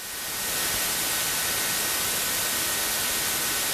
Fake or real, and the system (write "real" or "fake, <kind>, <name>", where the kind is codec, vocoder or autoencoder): real